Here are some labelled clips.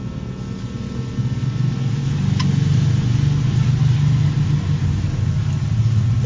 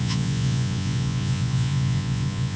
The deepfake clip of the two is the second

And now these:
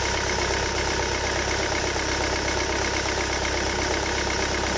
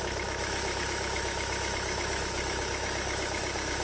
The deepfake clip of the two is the second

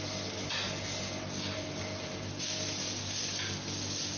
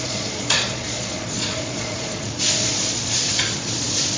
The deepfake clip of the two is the second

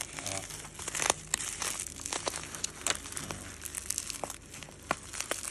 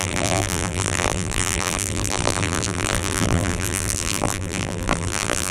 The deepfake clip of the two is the second